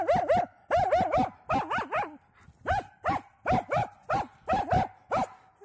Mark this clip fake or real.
real